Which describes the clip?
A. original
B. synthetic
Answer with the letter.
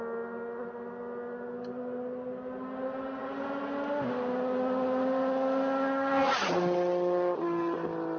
A